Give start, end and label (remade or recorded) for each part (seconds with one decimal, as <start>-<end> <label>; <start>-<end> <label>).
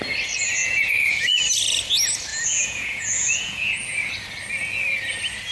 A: 0.0-0.6 recorded; 0.6-1.4 remade; 1.4-2.3 recorded; 2.3-4.1 remade; 4.1-5.5 recorded